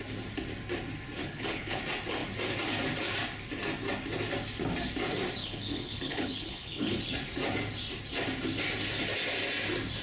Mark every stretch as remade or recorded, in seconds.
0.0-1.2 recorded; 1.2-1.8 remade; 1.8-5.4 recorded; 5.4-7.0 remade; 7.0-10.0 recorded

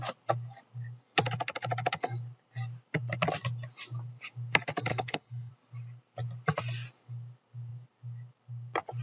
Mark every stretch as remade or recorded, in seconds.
0.0-4.9 recorded; 4.9-5.5 remade; 5.5-9.0 recorded

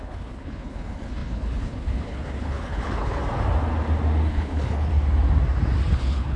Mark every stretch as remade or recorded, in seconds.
0.0-3.2 remade; 3.2-4.3 recorded; 4.3-4.9 remade; 4.9-5.9 recorded; 5.9-6.4 remade

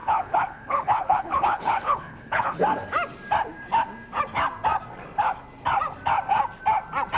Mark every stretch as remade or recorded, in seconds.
0.0-2.6 remade; 2.6-7.2 recorded

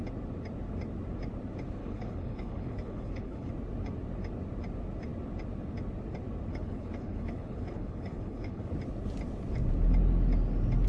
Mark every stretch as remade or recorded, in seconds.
0.0-1.8 recorded; 1.8-3.5 remade; 3.5-6.5 recorded; 6.5-8.7 remade; 8.7-10.9 recorded

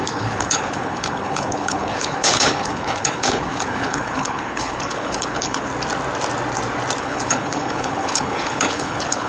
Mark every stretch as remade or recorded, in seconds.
0.0-5.7 remade; 5.7-7.0 recorded; 7.0-9.3 remade

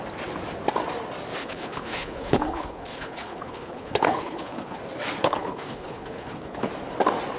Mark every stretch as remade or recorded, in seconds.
0.0-1.4 recorded; 1.4-4.8 remade; 4.8-5.2 recorded; 5.2-6.6 remade; 6.6-7.4 recorded